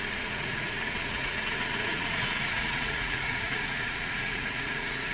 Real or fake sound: fake